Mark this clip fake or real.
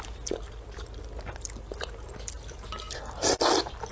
real